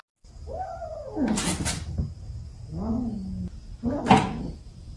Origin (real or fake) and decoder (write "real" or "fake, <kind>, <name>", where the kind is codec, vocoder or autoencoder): real